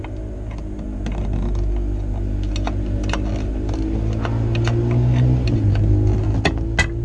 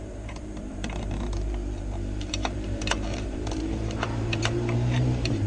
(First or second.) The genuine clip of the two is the first